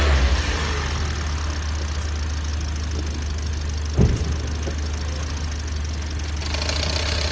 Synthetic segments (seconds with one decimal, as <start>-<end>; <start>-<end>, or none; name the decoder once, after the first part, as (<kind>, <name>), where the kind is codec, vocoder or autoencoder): none